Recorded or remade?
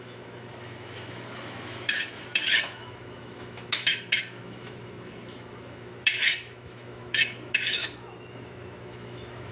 remade